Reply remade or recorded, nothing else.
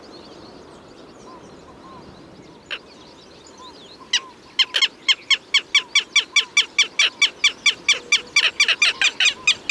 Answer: recorded